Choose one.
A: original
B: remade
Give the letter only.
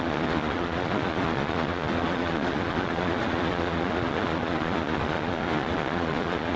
B